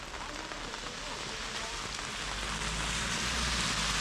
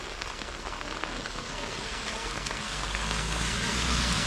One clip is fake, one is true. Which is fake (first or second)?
second